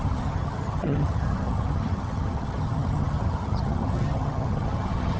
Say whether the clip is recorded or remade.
remade